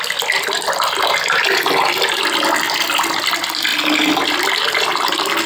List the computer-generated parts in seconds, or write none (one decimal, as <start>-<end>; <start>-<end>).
none